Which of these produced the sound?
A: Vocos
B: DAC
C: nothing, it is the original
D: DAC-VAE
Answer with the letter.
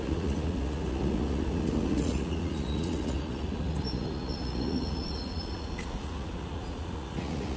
A